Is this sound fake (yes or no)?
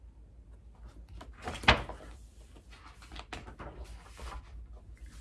no